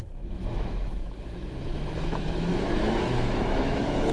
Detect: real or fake fake